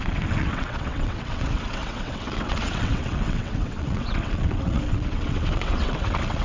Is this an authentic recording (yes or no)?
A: no